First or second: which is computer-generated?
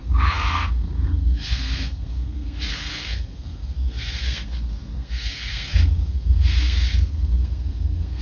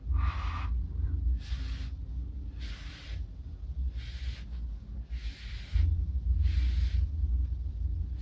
first